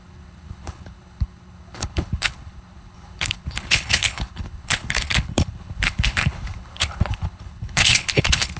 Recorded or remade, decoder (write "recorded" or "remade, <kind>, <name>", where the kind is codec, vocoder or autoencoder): remade, codec, HILCodec